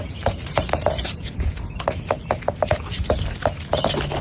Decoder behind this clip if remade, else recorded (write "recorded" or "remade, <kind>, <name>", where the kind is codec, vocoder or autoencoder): recorded